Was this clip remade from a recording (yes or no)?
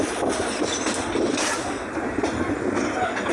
no